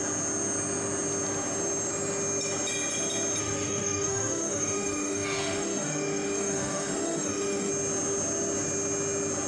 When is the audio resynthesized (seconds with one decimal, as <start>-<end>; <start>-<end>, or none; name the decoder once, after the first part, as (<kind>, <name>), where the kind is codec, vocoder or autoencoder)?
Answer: 3.4-7.7 (autoencoder, DAC-VAE)